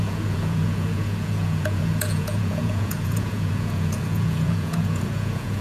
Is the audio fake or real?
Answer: fake